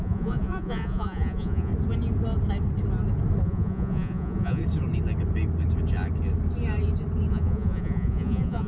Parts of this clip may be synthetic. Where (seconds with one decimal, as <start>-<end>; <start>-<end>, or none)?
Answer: 0.0-1.7; 3.4-4.6; 7.3-8.7